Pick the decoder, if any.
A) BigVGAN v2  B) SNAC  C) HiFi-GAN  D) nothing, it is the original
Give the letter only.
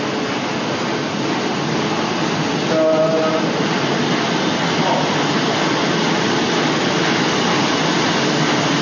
D